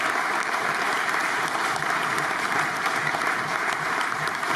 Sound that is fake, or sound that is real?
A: fake